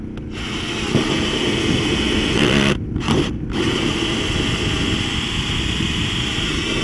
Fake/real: real